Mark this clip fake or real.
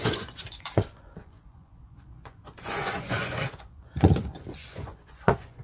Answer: fake